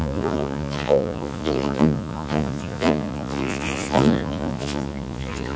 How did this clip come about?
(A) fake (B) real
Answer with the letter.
A